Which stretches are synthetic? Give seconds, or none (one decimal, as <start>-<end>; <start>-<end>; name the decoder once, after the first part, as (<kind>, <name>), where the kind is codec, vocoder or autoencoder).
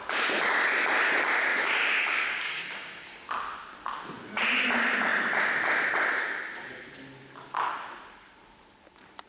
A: 1.5-3.3 (codec, DAC)